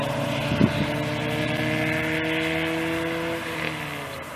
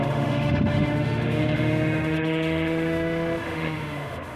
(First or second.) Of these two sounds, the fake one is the second